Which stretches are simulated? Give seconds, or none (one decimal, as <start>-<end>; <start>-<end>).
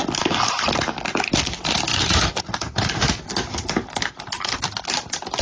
1.9-2.4